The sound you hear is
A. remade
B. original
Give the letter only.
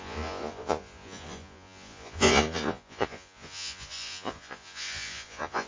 A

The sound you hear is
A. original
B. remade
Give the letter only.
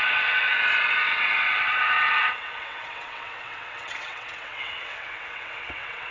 B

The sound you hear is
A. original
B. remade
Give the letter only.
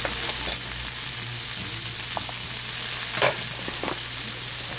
A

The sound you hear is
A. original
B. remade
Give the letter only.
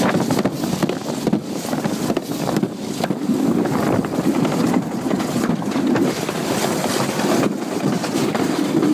A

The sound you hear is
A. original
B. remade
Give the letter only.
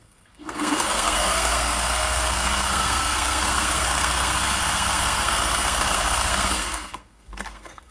B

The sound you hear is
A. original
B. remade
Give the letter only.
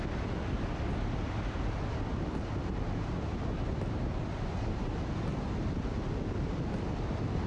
A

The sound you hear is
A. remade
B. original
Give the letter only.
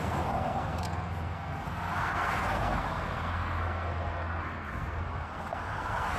A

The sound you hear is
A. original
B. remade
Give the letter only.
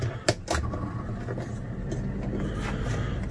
A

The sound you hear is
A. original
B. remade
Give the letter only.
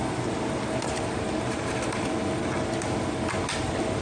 A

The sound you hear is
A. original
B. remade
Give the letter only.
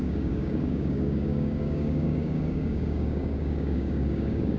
B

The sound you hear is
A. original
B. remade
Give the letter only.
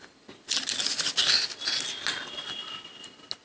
A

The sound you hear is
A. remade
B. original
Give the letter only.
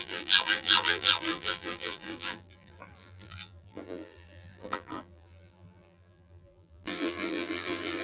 A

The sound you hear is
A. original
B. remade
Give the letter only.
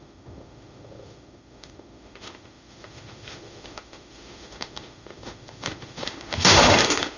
B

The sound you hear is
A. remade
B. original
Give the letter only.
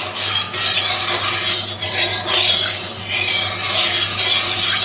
B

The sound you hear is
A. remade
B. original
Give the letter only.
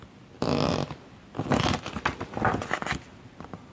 B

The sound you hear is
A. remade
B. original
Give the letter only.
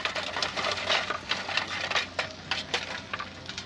B